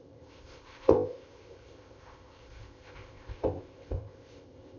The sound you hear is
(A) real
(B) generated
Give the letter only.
B